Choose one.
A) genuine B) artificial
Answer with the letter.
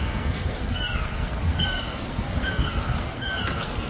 B